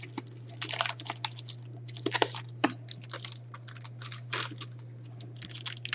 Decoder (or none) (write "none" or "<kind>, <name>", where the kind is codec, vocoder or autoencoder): none